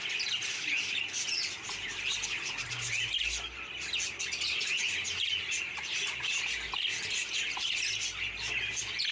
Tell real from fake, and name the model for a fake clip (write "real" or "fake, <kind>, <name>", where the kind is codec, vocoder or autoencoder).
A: real